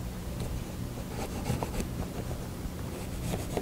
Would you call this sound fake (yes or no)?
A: no